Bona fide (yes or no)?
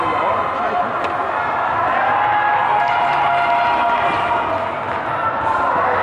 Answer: yes